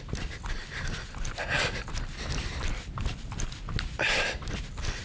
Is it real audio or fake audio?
real